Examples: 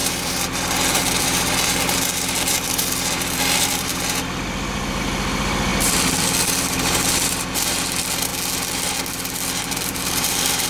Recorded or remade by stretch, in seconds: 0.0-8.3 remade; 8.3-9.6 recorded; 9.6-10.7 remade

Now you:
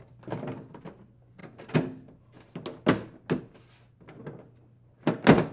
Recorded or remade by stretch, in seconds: 0.0-5.5 recorded

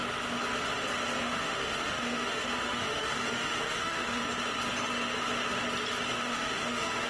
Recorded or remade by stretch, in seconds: 0.0-1.2 recorded; 1.2-4.2 remade; 4.2-6.1 recorded; 6.1-7.1 remade

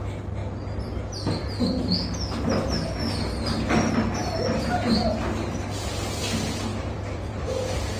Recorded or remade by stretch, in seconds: 0.0-0.4 recorded; 0.4-1.0 remade; 1.0-6.7 recorded; 6.7-7.4 remade; 7.4-8.0 recorded

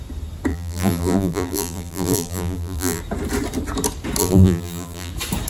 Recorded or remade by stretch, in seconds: 0.0-0.5 recorded; 0.5-3.0 remade; 3.0-4.2 recorded; 4.2-5.1 remade; 5.1-5.5 recorded

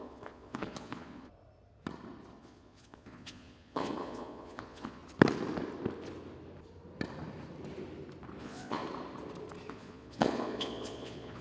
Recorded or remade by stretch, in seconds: 0.0-1.3 remade; 1.3-2.4 recorded; 2.4-5.0 remade; 5.0-8.4 recorded; 8.4-8.8 remade; 8.8-9.7 recorded; 9.7-11.4 remade

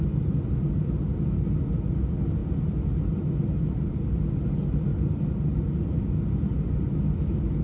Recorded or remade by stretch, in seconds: 0.0-4.9 recorded; 4.9-6.0 remade; 6.0-7.6 recorded

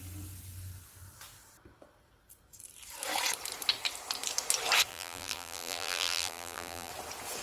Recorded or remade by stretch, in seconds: 0.0-4.9 recorded; 4.9-6.9 remade; 6.9-7.4 recorded